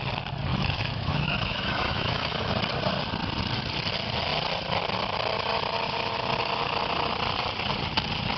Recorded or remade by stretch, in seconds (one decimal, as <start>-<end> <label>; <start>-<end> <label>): 0.0-0.5 recorded; 0.5-2.5 remade; 2.5-8.4 recorded